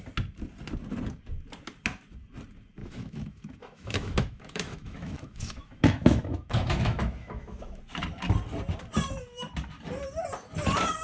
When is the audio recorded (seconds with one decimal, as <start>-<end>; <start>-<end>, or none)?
0.0-2.8; 7.8-11.0